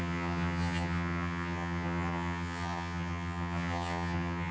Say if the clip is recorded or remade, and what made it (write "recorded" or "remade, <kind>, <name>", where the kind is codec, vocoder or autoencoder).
remade, vocoder, HiFi-GAN